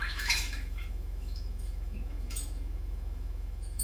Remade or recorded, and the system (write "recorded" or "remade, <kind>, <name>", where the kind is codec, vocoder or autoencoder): remade, autoencoder, DAC-VAE